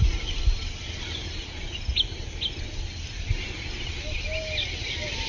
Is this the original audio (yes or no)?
yes